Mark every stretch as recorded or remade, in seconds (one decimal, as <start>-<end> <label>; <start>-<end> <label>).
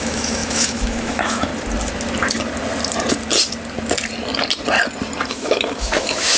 0.0-1.5 remade; 1.5-5.3 recorded; 5.3-6.4 remade